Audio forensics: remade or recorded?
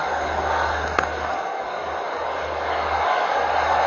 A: remade